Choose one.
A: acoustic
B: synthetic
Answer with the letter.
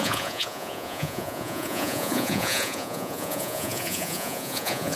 B